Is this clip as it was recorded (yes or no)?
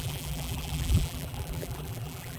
no